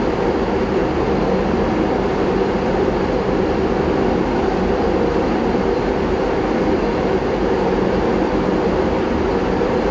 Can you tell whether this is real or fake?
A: real